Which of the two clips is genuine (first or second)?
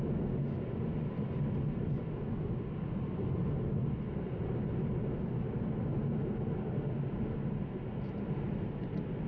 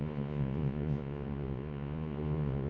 first